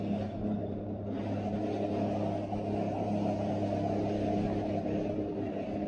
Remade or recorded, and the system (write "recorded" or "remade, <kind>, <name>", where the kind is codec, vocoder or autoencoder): recorded